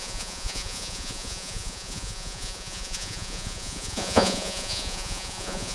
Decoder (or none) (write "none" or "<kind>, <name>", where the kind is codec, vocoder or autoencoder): vocoder, Vocos